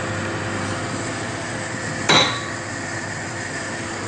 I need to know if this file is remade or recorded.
recorded